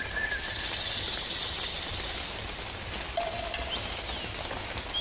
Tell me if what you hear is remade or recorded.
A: recorded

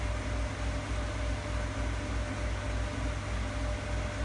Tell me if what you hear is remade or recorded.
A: recorded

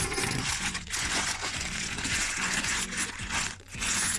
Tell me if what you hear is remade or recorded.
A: remade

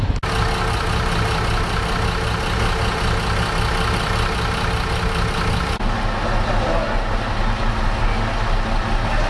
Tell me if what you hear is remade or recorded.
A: recorded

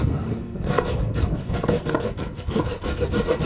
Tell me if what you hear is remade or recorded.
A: remade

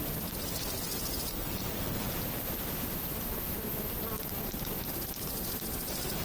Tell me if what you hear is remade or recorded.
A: recorded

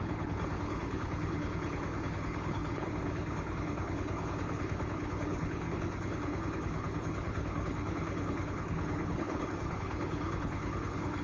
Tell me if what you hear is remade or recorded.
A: remade